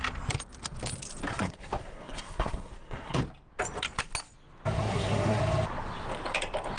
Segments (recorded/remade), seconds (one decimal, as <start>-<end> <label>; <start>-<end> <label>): 0.0-1.3 recorded; 1.3-3.2 remade; 3.2-4.8 recorded; 4.8-5.4 remade; 5.4-6.8 recorded